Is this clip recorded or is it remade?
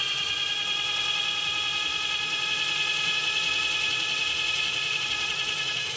remade